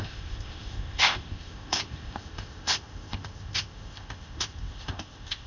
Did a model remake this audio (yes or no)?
yes